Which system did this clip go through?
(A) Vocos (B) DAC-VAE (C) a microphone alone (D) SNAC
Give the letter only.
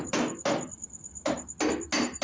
C